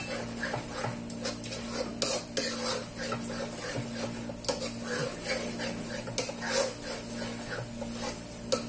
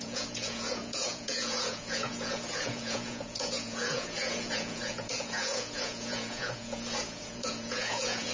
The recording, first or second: first